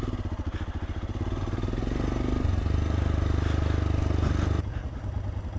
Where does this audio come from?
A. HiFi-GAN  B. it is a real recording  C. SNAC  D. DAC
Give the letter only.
B